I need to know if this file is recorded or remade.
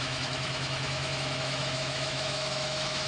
remade